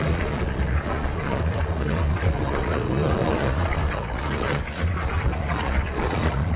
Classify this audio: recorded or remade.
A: remade